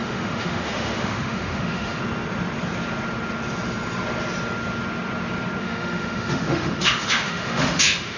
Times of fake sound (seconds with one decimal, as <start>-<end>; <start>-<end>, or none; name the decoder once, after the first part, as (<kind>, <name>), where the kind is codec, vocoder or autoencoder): 0.0-2.0 (autoencoder, DAC-VAE); 5.6-8.2